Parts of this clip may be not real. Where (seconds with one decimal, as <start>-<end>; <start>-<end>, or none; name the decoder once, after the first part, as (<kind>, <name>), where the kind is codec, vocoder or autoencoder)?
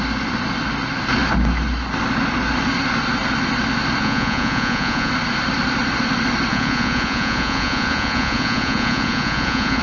4.0-5.1 (vocoder, Vocos); 6.5-9.8